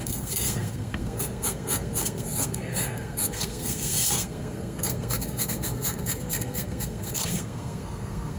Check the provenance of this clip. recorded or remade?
remade